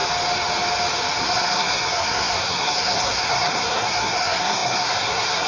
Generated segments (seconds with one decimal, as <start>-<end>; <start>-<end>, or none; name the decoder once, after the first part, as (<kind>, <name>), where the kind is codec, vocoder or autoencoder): 1.2-5.5 (codec, SNAC)